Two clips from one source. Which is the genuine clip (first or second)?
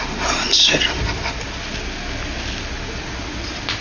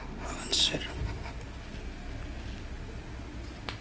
second